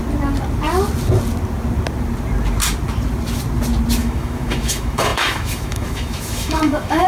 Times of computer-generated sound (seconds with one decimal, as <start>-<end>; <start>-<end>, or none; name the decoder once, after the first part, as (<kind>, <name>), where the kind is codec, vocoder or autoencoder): 4.0-7.1 (autoencoder, DAC-VAE)